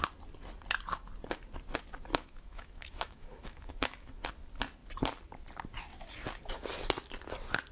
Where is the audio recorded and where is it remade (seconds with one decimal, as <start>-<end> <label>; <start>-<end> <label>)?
0.0-2.1 recorded; 2.1-4.3 remade; 4.3-7.7 recorded

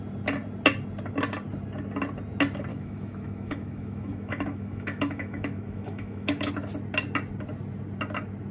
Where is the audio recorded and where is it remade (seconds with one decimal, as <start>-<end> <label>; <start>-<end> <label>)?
0.0-2.7 recorded; 2.7-6.5 remade; 6.5-8.5 recorded

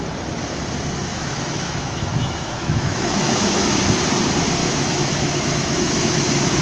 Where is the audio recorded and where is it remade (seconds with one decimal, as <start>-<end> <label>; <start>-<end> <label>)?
0.0-1.1 recorded; 1.1-3.8 remade; 3.8-4.6 recorded; 4.6-6.6 remade

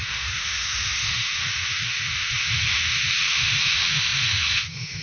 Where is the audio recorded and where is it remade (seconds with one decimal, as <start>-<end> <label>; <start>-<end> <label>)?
0.0-5.0 remade

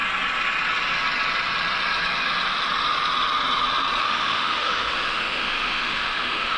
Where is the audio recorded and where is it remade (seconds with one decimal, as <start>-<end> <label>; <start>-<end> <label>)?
0.0-4.0 recorded; 4.0-6.6 remade

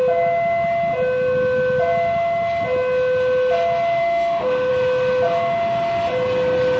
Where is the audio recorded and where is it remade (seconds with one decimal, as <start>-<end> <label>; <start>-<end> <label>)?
0.0-4.0 recorded; 4.0-4.7 remade; 4.7-6.8 recorded

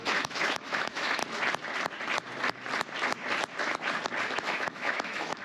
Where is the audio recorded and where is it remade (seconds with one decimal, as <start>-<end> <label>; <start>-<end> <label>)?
0.0-1.2 remade; 1.2-4.4 recorded; 4.4-5.4 remade